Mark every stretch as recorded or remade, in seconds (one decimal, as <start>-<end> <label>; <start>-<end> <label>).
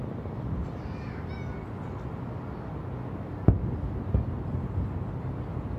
0.0-5.8 recorded